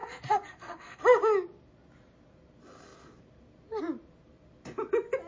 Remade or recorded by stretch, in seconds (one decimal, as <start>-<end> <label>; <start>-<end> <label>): 0.0-1.0 remade; 1.0-5.3 recorded